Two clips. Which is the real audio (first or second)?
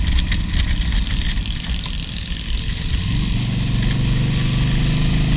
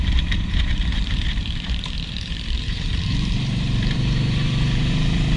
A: first